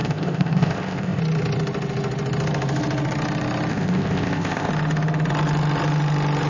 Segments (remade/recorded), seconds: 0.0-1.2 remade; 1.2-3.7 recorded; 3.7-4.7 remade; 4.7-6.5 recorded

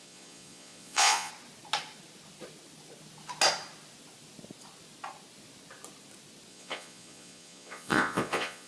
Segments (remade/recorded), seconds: 0.0-1.3 remade; 1.3-6.5 recorded; 6.5-8.7 remade

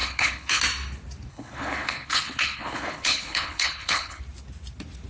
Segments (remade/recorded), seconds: 0.0-0.6 remade; 0.6-1.3 recorded; 1.3-4.2 remade; 4.2-5.1 recorded

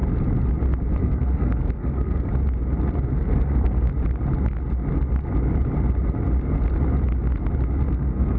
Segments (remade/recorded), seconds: 0.0-1.0 recorded; 1.0-2.3 remade; 2.3-3.1 recorded; 3.1-3.9 remade; 3.9-7.9 recorded; 7.9-8.4 remade

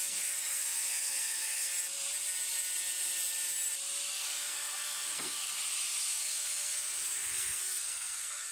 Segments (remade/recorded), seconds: 0.0-1.7 remade; 1.7-4.1 recorded; 4.1-5.5 remade; 5.5-6.1 recorded; 6.1-8.5 remade